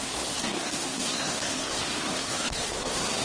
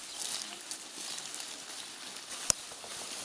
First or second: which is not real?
first